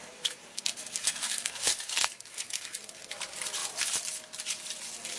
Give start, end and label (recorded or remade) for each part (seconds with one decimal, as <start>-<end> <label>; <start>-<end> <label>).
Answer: 0.0-3.1 remade; 3.1-5.2 recorded